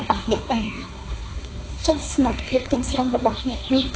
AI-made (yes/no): yes